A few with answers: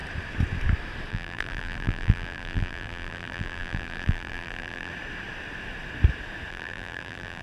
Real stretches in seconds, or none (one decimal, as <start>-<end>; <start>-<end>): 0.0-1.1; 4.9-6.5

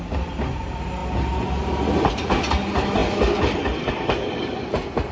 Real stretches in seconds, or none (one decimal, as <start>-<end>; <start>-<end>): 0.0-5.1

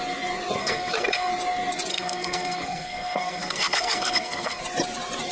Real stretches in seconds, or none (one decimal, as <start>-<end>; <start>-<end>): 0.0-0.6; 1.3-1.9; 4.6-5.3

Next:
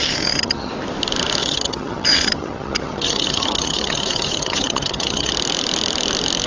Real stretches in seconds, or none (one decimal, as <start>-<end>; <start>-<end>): 0.7-1.4; 5.3-6.5

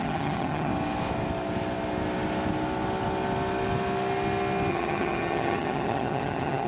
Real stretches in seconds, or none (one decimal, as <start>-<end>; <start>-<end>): 0.7-4.7